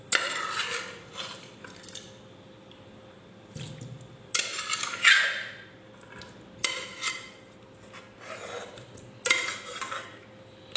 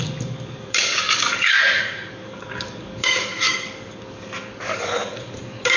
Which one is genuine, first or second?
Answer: first